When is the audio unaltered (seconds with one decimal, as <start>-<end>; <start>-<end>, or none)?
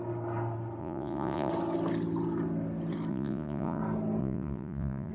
0.0-0.8; 1.5-3.1; 3.8-4.2